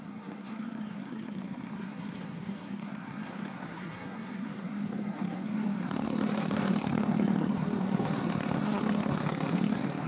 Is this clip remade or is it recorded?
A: remade